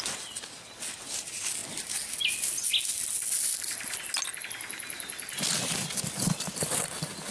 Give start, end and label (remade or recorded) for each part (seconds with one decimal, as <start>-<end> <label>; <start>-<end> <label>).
0.0-7.3 recorded